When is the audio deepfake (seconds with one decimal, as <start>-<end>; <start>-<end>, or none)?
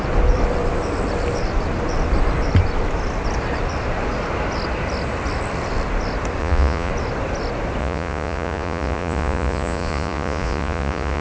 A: 6.4-6.9; 7.8-11.2